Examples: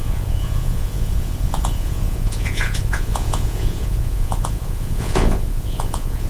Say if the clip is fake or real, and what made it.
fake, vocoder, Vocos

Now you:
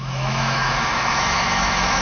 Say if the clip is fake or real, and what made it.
fake, autoencoder, DAC-VAE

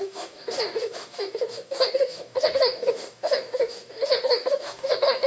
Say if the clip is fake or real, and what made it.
fake, codec, DAC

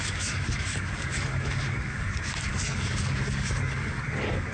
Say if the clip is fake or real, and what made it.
fake, codec, DAC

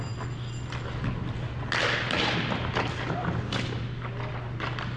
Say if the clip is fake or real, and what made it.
real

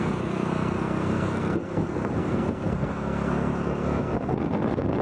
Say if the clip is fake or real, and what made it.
fake, codec, SNAC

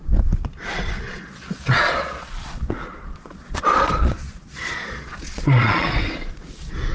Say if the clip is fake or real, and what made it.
fake, vocoder, Vocos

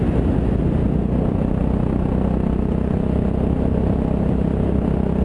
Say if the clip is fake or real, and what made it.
real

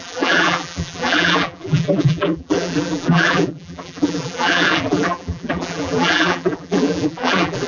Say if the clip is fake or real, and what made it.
fake, vocoder, BigVGAN v2